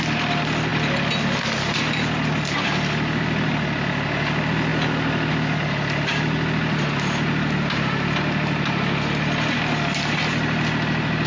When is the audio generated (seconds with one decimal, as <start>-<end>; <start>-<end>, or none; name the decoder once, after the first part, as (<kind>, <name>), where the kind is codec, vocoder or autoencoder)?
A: none